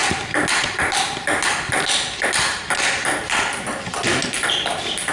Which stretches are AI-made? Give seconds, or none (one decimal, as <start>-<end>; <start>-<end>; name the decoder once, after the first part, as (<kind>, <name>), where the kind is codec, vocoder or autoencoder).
none